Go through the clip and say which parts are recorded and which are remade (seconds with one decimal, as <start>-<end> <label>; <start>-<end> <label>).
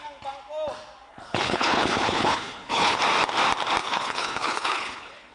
0.0-1.1 recorded; 1.1-3.0 remade; 3.0-3.8 recorded; 3.8-5.3 remade